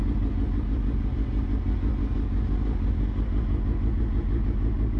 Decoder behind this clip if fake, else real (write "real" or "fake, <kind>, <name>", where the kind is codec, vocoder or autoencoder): real